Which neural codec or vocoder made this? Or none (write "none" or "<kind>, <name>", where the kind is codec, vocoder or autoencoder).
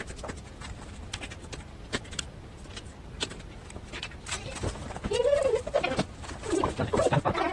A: vocoder, BigVGAN v2